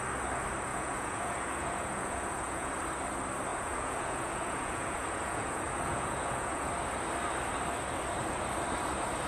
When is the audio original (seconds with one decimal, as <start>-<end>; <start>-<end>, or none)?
0.0-0.7; 2.7-3.5; 6.7-9.3